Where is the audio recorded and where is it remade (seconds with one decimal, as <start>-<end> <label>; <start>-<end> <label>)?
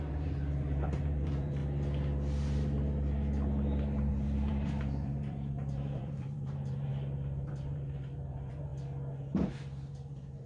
0.0-1.6 remade; 1.6-4.1 recorded; 4.1-6.9 remade; 6.9-7.5 recorded; 7.5-8.7 remade; 8.7-9.9 recorded; 9.9-10.5 remade